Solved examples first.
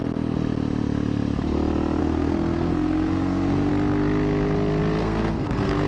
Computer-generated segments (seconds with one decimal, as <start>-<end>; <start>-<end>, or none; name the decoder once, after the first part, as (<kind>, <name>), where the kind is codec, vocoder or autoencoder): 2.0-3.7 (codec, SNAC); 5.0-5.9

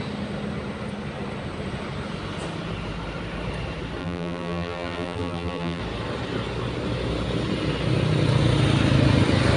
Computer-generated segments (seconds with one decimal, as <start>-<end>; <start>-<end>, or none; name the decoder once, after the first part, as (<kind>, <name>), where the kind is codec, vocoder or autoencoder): 4.0-5.8 (vocoder, BigVGAN v2)

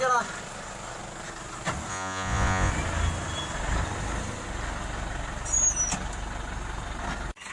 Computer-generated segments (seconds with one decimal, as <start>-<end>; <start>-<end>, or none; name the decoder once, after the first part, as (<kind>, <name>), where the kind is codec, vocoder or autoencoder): 1.9-2.7 (vocoder, Vocos)

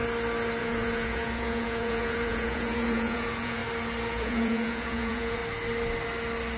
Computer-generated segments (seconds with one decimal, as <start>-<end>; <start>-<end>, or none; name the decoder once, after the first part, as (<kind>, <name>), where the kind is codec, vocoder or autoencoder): 0.6-3.6 (vocoder, Vocos); 4.1-5.4